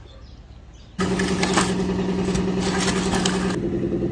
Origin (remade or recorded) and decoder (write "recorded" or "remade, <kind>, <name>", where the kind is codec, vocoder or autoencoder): recorded